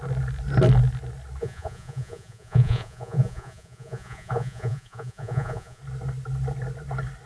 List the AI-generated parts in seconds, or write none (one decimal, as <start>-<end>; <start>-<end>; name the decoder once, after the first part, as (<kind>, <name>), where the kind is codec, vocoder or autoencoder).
1.4-5.8 (vocoder, Vocos)